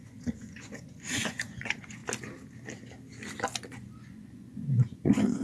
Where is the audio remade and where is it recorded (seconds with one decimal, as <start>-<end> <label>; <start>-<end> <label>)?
0.0-2.0 remade; 2.0-3.7 recorded; 3.7-5.4 remade